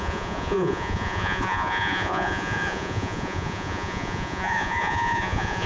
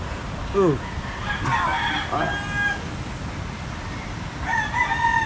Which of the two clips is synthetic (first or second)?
first